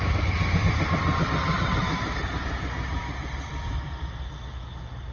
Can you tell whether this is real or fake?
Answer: real